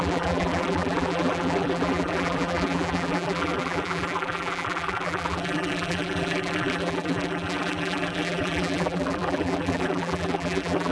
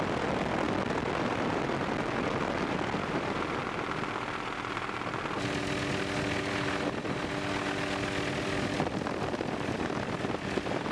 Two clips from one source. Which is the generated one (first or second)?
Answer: first